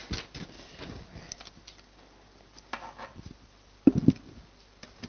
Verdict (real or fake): real